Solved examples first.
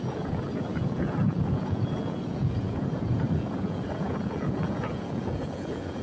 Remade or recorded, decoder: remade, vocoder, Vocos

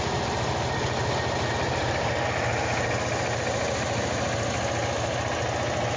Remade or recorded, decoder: recorded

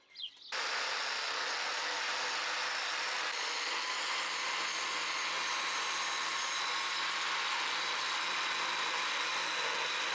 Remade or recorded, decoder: recorded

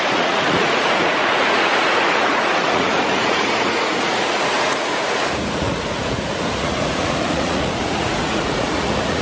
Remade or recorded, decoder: remade, vocoder, Vocos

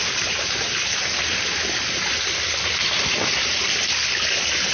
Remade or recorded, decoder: recorded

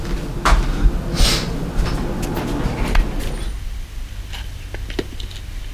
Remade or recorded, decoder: recorded